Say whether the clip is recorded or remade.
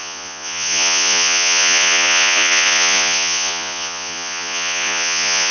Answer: remade